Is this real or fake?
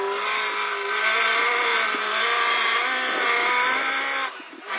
real